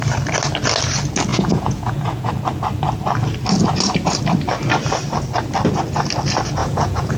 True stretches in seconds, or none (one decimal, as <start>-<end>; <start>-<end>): 0.0-1.3; 2.3-6.6